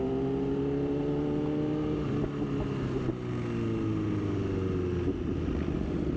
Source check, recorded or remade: recorded